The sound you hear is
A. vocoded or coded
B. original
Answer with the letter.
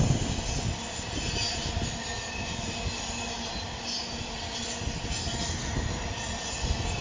B